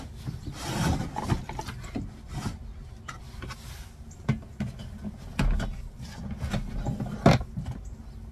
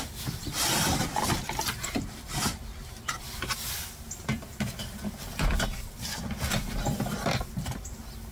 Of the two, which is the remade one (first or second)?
second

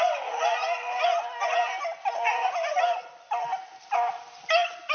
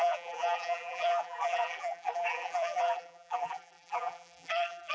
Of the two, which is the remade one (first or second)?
second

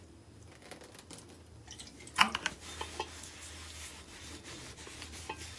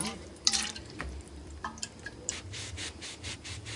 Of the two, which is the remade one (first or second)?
second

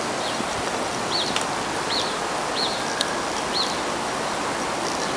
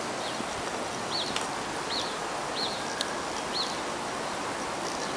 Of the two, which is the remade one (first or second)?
first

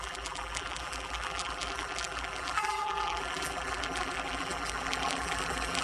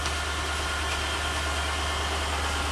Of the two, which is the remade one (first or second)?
first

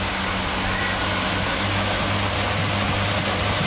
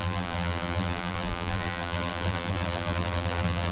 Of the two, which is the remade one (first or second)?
second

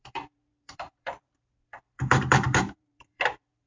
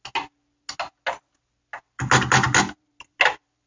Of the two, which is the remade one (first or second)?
first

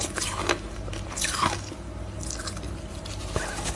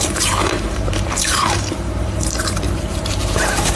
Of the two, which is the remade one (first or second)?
second